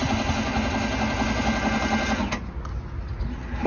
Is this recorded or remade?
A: recorded